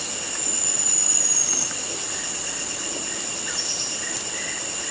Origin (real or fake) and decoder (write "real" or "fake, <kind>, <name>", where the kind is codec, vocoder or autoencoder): real